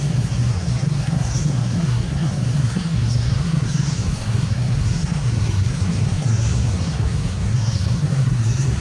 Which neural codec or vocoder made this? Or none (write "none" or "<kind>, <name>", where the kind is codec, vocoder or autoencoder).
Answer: codec, SNAC